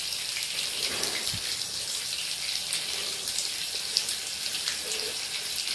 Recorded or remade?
recorded